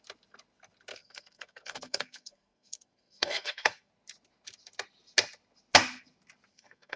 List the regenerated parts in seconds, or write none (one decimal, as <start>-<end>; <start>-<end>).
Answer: 0.9-3.9; 6.5-7.0